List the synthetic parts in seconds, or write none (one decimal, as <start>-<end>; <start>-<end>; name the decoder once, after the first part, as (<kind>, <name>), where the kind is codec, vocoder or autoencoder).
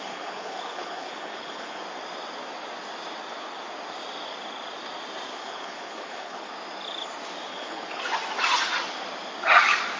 0.0-1.8 (codec, HILCodec); 5.3-6.5; 7.5-8.0